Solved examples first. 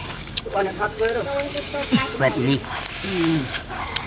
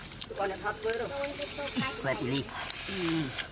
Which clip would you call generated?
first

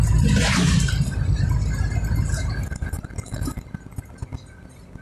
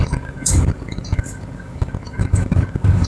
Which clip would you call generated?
second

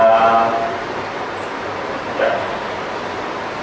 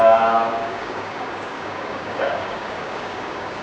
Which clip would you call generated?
second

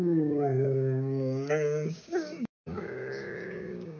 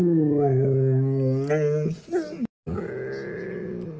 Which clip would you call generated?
first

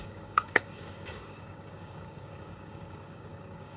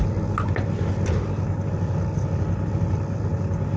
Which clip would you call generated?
first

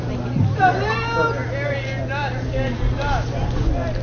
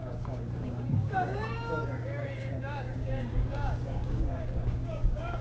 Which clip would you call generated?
second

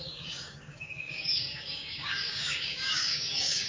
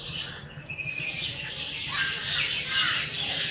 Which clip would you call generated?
first